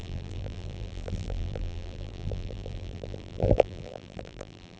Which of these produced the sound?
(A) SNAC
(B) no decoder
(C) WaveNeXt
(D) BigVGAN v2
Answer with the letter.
D